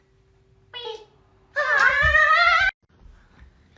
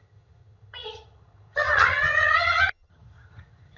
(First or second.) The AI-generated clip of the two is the second